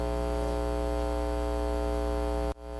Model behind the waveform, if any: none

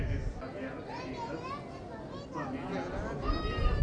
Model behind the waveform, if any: none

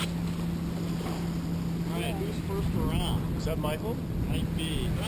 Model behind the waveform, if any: none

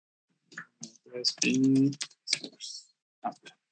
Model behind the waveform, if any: none